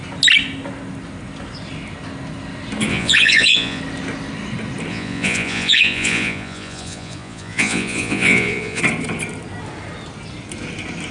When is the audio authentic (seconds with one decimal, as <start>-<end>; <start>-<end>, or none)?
0.0-2.9; 3.8-4.9; 8.8-11.1